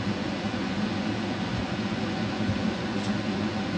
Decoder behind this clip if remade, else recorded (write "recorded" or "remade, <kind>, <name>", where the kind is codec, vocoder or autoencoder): remade, vocoder, Vocos